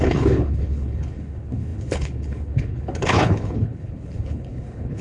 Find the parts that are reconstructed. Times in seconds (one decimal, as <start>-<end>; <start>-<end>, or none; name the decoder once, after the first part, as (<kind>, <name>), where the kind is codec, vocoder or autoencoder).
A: 0.0-5.0 (codec, HILCodec)